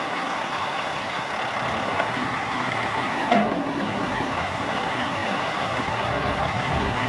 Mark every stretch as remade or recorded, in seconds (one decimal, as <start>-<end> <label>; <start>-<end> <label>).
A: 0.0-1.3 remade; 1.3-1.8 recorded; 1.8-7.1 remade